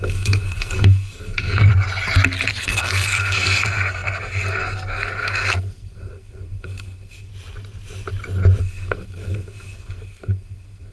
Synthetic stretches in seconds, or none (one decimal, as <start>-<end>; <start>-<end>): 0.0-1.7; 2.6-7.3; 8.6-10.9